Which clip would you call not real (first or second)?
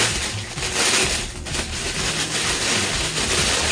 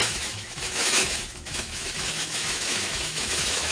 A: second